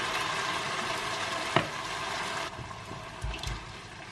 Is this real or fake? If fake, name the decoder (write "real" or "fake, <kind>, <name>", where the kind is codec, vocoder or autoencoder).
real